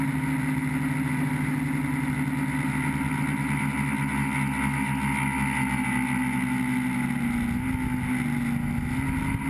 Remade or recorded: recorded